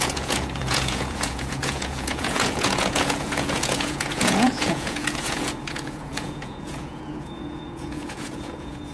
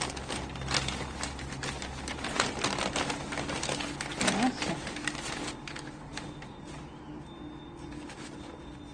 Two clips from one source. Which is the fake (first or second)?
first